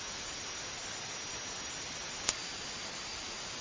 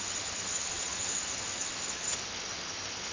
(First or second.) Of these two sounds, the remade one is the second